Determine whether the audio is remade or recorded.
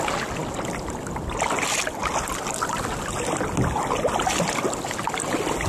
recorded